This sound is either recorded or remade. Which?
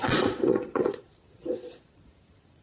remade